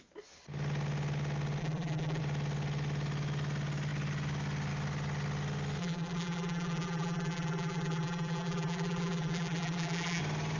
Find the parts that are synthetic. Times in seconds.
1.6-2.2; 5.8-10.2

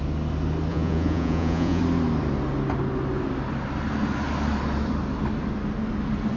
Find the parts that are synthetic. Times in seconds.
0.7-1.8

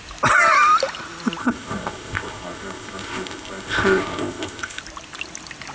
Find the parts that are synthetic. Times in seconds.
1.4-4.8

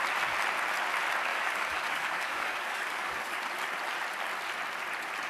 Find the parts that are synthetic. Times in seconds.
1.3-3.4